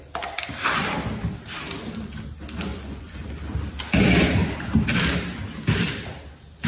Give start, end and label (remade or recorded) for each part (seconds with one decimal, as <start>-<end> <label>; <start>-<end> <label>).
0.0-2.7 recorded; 2.7-3.3 remade; 3.3-6.7 recorded